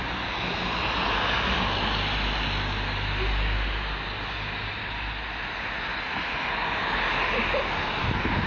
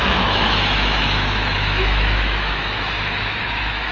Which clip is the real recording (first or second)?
first